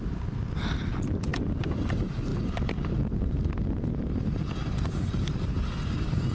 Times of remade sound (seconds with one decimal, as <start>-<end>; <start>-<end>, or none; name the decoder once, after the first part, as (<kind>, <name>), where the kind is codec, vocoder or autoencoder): none